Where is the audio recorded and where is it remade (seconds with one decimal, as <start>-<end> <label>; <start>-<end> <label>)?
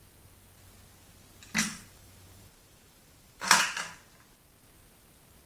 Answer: 0.0-1.7 recorded; 1.7-3.6 remade; 3.6-5.5 recorded